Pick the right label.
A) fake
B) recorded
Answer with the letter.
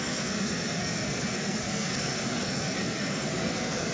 A